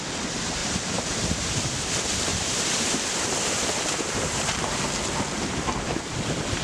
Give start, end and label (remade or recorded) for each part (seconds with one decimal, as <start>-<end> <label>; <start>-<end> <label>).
0.0-0.6 recorded; 0.6-1.6 remade; 1.6-2.3 recorded; 2.3-5.1 remade; 5.1-6.6 recorded